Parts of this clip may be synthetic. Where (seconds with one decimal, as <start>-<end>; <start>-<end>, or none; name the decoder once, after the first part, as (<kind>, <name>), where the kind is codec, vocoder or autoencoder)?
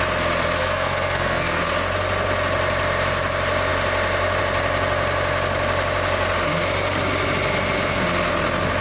0.6-1.6 (codec, SNAC)